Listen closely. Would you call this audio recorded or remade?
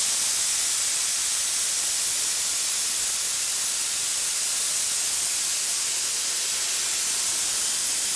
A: recorded